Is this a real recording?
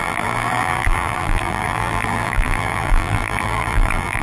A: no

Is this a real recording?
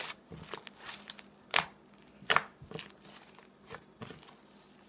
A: yes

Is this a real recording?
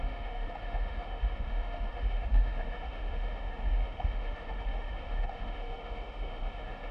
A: no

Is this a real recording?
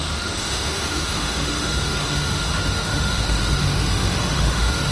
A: no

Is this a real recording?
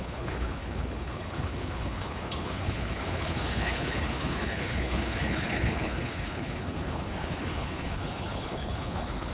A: no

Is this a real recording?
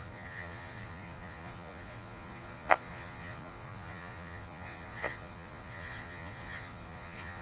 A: no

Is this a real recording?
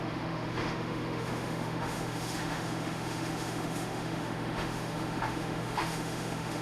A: no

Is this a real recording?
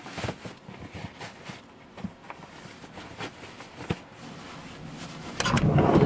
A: yes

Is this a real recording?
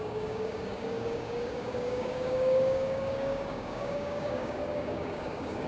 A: no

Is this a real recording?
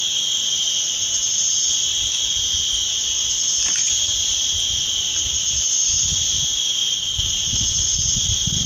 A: yes